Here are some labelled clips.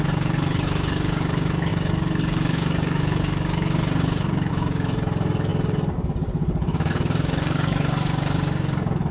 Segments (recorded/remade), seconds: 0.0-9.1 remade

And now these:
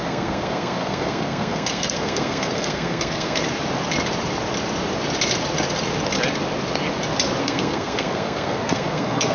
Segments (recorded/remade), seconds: 0.0-3.4 remade; 3.4-7.4 recorded; 7.4-9.3 remade

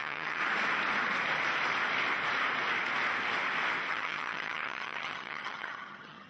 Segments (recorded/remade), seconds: 0.0-0.4 remade; 0.4-3.9 recorded; 3.9-6.3 remade

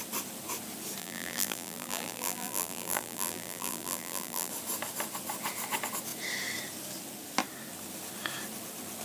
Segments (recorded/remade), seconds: 0.0-1.0 recorded; 1.0-4.5 remade; 4.5-9.0 recorded

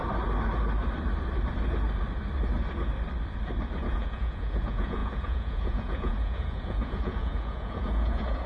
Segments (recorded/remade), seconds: 0.0-3.8 recorded; 3.8-8.5 remade